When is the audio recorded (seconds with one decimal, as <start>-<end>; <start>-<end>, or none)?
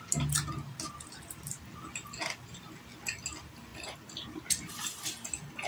0.0-5.7